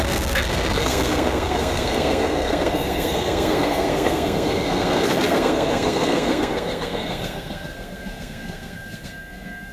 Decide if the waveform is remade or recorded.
remade